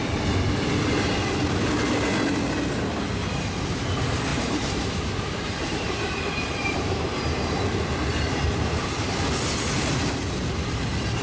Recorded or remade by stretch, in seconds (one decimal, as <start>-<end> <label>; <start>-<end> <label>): 0.0-4.3 recorded; 4.3-9.1 remade; 9.1-11.2 recorded